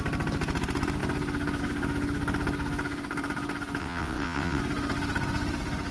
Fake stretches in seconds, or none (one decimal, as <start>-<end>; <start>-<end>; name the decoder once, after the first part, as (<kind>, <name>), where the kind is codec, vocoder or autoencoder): 3.8-4.6 (vocoder, WaveNeXt)